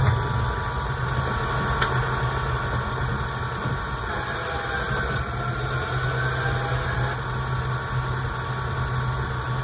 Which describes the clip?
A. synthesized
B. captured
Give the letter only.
B